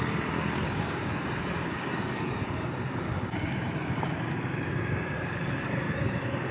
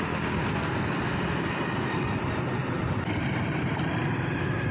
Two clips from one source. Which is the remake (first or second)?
first